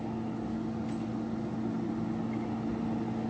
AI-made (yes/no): no